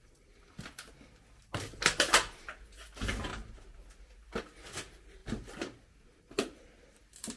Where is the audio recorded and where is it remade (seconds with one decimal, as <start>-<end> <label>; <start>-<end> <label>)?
0.0-7.4 recorded